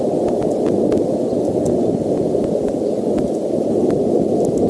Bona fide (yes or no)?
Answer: yes